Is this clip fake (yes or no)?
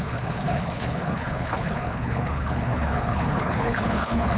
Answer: yes